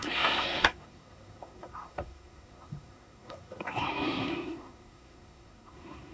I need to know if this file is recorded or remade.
remade